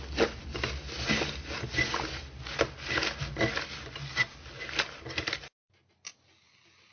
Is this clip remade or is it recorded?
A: recorded